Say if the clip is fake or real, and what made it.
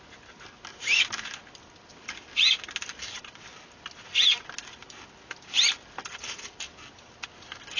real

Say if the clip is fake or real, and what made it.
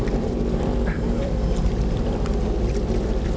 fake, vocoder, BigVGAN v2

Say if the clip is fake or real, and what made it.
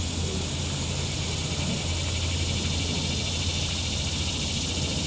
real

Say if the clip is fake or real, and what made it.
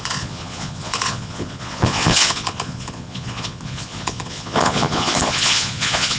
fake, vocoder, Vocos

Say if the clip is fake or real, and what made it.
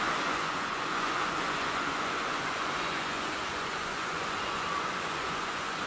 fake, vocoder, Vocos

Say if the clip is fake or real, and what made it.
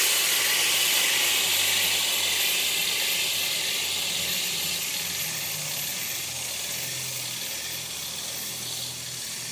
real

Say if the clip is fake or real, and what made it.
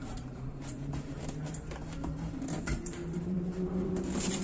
fake, vocoder, BigVGAN v2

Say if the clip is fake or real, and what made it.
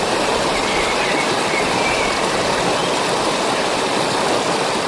real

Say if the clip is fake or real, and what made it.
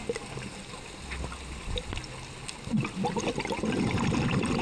real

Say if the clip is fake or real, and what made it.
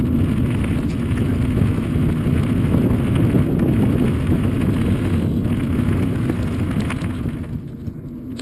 real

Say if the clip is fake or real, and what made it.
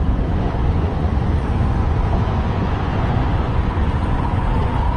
fake, vocoder, Vocos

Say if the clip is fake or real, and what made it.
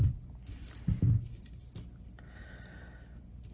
real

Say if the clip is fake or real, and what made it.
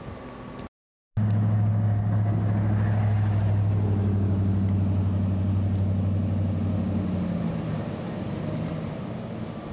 real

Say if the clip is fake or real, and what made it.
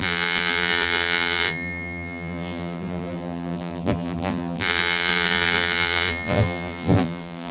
fake, vocoder, BigVGAN v2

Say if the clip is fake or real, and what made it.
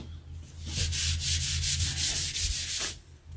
real